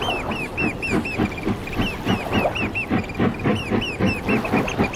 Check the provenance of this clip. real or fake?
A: real